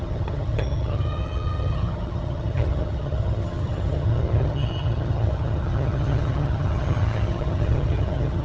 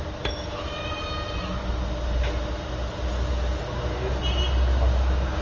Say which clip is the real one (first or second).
second